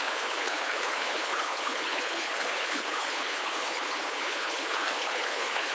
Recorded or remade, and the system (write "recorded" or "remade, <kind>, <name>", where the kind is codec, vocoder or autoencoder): remade, codec, HILCodec